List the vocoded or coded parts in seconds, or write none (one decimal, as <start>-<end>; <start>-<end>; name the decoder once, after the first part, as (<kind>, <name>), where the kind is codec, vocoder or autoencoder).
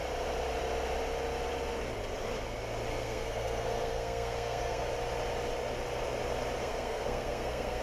2.9-4.8 (codec, SNAC); 6.6-7.8